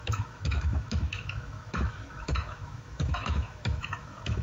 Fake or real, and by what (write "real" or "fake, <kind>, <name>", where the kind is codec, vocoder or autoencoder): fake, autoencoder, DAC-VAE